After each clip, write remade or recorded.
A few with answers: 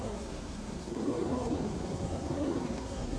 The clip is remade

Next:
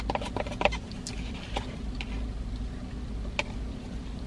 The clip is recorded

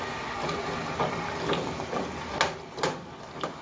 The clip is recorded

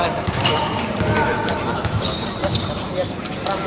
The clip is recorded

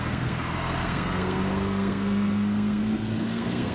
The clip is remade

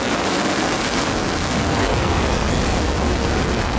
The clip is remade